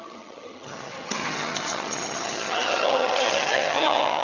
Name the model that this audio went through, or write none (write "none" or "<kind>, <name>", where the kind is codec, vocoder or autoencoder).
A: vocoder, HiFi-GAN